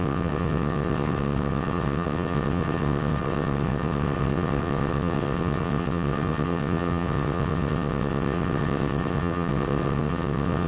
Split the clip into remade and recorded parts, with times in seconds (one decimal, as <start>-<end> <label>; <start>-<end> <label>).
0.0-10.7 remade